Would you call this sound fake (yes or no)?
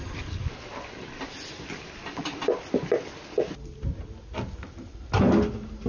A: no